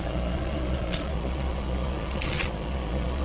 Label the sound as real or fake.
fake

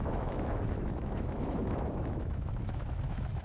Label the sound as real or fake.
fake